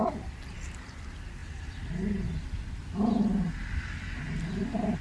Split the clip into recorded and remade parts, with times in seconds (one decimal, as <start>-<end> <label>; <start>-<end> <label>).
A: 0.0-1.4 remade; 1.4-4.4 recorded; 4.4-5.0 remade